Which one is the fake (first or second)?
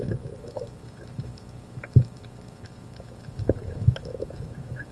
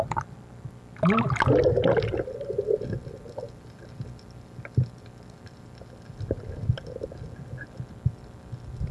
first